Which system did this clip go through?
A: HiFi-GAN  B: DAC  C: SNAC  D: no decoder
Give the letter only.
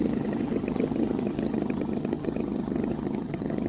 A